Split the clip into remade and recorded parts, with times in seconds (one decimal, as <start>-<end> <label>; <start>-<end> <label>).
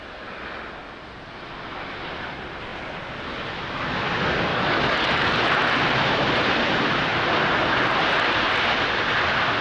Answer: 0.0-4.5 recorded; 4.5-5.4 remade; 5.4-9.6 recorded